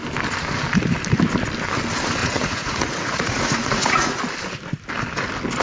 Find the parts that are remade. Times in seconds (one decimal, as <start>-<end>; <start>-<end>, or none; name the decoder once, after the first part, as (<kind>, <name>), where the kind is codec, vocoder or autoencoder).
2.2-4.2 (vocoder, Vocos)